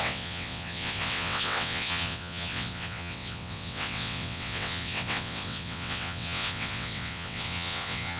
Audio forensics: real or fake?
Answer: fake